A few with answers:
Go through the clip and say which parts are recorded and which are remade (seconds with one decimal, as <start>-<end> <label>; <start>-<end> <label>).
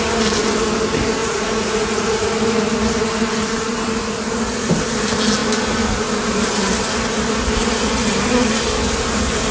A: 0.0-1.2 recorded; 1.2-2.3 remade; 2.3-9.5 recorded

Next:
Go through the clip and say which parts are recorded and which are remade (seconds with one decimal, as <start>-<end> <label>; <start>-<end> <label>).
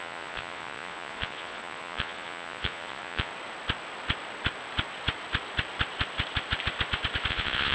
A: 0.0-3.3 remade; 3.3-7.3 recorded; 7.3-7.7 remade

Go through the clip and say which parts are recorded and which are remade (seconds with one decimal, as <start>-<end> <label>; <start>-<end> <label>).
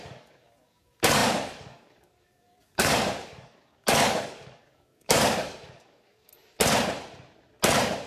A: 0.0-6.3 remade; 6.3-8.1 recorded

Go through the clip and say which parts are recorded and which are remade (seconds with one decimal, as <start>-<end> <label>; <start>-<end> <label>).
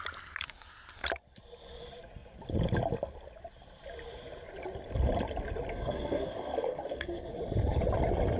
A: 0.0-5.7 recorded; 5.7-7.3 remade; 7.3-8.4 recorded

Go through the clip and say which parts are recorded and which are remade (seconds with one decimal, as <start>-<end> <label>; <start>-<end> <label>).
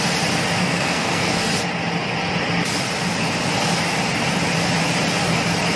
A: 0.0-0.6 recorded; 0.6-1.5 remade; 1.5-5.8 recorded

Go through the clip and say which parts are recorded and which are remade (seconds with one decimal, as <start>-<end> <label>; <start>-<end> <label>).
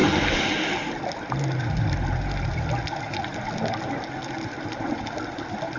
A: 0.0-5.8 recorded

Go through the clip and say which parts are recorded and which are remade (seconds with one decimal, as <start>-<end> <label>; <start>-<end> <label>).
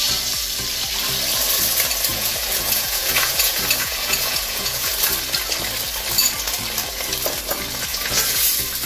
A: 0.0-2.1 recorded; 2.1-4.9 remade; 4.9-7.9 recorded; 7.9-8.5 remade; 8.5-8.9 recorded